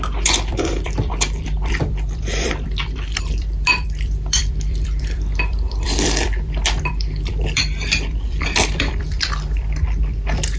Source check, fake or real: fake